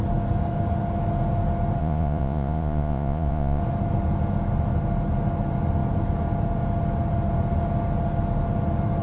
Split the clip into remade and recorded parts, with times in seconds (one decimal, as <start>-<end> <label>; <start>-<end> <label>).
0.0-1.8 recorded; 1.8-3.6 remade; 3.6-9.0 recorded